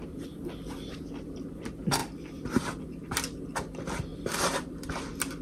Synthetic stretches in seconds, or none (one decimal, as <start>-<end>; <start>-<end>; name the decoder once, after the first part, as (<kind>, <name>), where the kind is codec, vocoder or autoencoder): 2.0-3.1 (vocoder, BigVGAN v2); 4.1-4.9